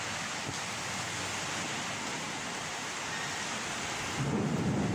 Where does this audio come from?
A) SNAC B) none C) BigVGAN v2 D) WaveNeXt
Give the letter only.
B